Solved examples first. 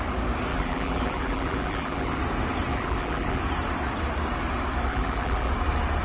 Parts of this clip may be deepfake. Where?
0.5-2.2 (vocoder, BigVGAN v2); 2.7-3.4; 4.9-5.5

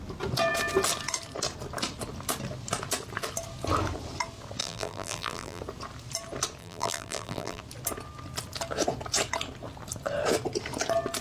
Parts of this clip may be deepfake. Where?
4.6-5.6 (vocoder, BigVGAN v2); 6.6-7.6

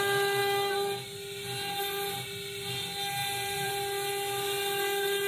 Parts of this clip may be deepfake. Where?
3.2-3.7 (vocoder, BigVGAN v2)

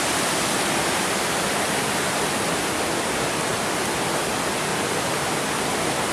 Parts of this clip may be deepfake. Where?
4.7-5.4 (vocoder, BigVGAN v2)

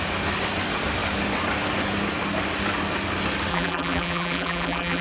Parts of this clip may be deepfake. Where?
3.5-5.0 (vocoder, BigVGAN v2)

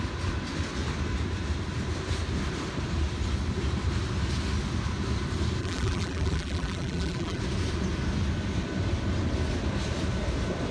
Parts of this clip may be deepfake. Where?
5.6-7.4 (vocoder, BigVGAN v2)